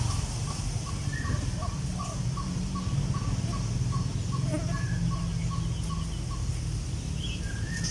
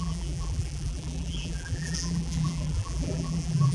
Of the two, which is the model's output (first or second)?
second